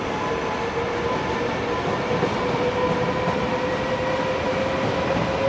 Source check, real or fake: real